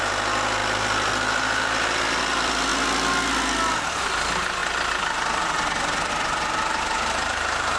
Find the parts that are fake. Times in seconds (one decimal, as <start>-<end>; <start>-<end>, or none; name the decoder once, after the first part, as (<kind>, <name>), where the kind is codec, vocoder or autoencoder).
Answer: 0.0-2.7 (vocoder, BigVGAN v2); 4.0-7.8